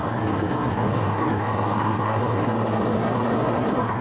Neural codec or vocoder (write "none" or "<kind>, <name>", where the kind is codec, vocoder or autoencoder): codec, SNAC